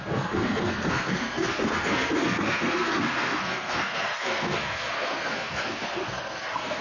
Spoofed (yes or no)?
yes